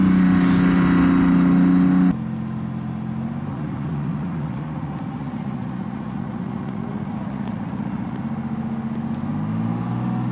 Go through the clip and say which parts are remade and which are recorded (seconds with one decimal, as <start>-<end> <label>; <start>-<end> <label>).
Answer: 0.0-3.5 recorded; 3.5-8.2 remade; 8.2-10.3 recorded

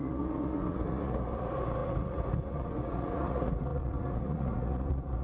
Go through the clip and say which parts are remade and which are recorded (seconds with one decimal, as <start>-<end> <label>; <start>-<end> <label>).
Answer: 0.0-5.2 remade

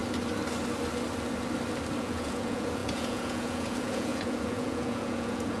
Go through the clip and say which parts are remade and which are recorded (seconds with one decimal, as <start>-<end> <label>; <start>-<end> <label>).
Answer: 0.0-2.0 recorded; 2.0-5.6 remade

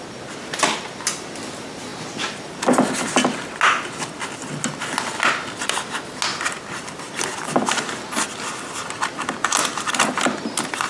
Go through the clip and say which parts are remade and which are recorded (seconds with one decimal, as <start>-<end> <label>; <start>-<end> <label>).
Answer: 0.0-10.9 recorded

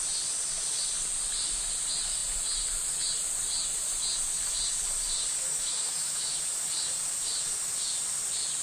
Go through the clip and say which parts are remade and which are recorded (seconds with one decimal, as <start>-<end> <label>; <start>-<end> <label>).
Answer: 0.0-5.5 recorded; 5.5-6.4 remade; 6.4-8.6 recorded

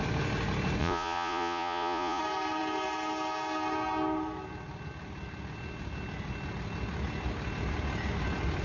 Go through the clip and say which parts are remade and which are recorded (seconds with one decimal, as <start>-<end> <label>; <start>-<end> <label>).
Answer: 0.0-0.8 recorded; 0.8-2.2 remade; 2.2-8.6 recorded

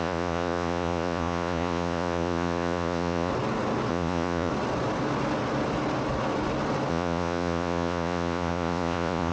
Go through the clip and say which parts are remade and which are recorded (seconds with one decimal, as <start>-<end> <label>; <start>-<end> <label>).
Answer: 0.0-3.3 remade; 3.3-3.9 recorded; 3.9-4.5 remade; 4.5-6.9 recorded; 6.9-9.3 remade